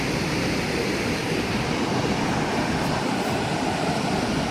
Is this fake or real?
real